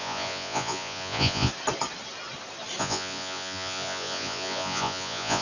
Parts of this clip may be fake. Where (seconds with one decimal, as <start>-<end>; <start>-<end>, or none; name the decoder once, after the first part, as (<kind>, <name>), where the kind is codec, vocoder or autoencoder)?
0.0-1.5 (vocoder, Vocos); 2.8-5.4